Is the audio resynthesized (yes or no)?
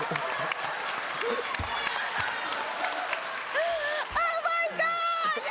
no